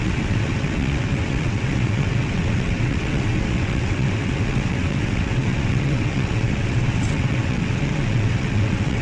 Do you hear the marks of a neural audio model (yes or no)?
yes